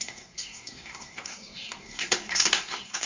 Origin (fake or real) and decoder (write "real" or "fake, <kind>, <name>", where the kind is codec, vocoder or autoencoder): fake, codec, SNAC